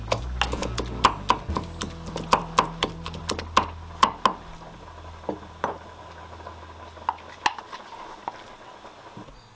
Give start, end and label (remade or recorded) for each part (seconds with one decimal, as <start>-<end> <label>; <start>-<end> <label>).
0.0-9.6 recorded